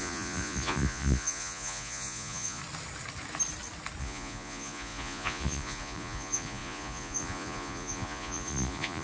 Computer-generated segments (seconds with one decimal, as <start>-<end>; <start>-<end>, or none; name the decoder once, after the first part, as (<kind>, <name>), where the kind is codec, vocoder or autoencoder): 0.0-2.6 (vocoder, Vocos); 4.0-9.0